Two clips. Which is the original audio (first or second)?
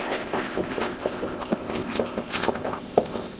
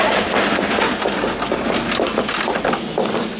second